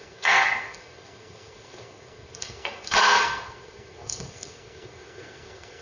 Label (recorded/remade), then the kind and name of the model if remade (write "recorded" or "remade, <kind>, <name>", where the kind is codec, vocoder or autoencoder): remade, codec, SNAC